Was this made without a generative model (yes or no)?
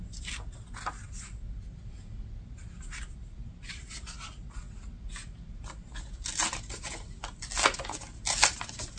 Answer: yes